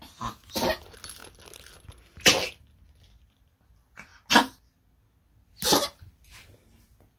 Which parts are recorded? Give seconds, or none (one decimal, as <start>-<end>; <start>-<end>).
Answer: 0.0-5.7; 6.5-7.2

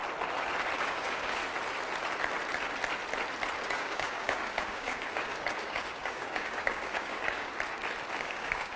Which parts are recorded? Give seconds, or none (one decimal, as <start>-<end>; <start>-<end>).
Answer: 0.0-0.8; 1.4-3.6; 7.5-8.1

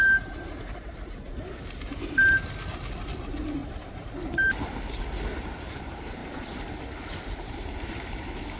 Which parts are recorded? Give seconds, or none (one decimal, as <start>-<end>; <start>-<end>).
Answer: 3.6-5.0; 6.2-6.8

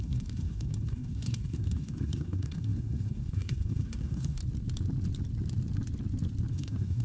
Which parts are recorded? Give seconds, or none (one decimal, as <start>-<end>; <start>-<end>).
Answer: 4.4-6.5